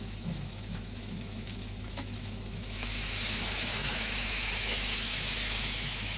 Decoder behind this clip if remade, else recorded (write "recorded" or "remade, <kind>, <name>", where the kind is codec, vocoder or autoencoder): remade, autoencoder, DAC-VAE